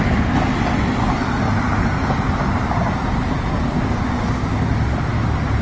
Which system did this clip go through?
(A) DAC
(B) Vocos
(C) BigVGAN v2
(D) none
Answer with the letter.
D